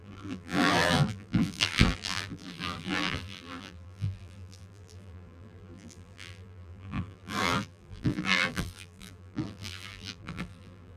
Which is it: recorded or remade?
remade